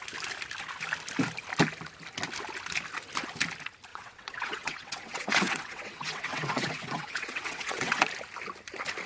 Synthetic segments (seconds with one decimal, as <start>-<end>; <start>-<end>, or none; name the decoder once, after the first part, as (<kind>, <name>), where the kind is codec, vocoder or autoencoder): 3.9-8.0 (vocoder, WaveNeXt)

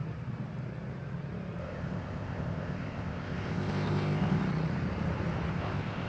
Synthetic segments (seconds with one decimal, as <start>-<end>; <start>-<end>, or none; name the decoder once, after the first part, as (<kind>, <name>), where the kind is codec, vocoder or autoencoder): 1.6-4.4 (codec, ZipCodec); 5.5-6.1

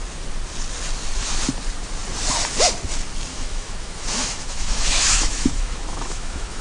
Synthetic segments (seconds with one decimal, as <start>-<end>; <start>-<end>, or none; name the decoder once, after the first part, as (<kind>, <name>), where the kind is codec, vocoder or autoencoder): 3.3-6.6 (autoencoder, DAC-VAE)